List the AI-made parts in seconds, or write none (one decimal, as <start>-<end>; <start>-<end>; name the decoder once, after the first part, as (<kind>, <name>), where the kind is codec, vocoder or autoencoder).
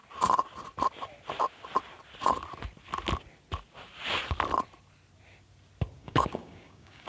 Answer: 6.0-7.1 (codec, DAC)